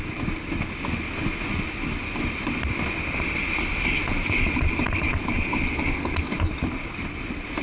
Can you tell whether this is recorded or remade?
recorded